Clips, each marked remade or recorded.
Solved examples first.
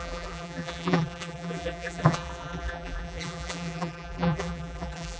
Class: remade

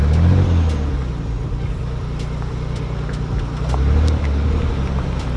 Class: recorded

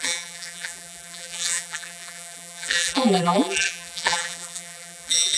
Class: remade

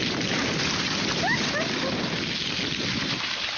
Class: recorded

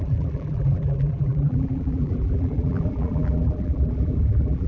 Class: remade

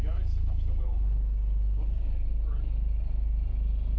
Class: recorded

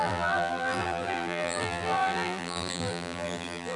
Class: remade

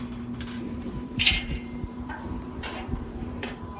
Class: remade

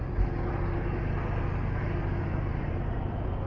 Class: recorded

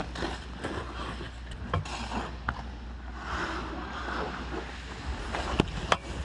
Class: recorded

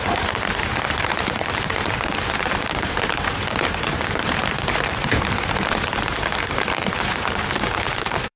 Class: remade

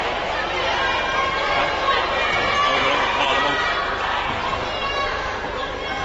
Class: recorded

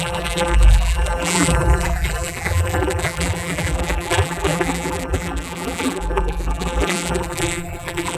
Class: remade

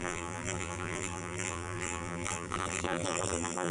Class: remade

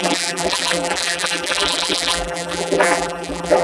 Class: remade